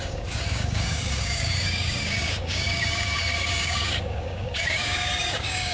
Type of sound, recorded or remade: remade